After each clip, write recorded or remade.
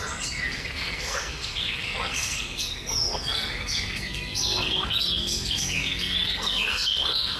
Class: remade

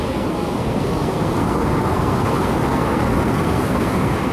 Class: remade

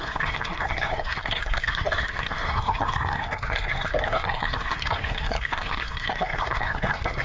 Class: remade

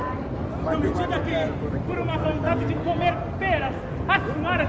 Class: recorded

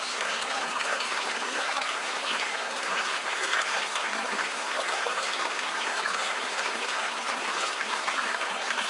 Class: remade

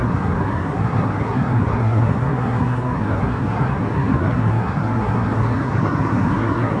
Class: remade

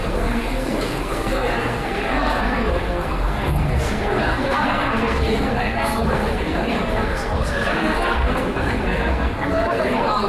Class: remade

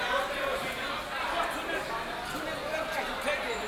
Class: recorded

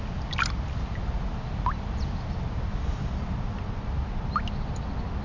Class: recorded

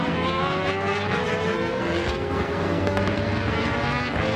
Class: remade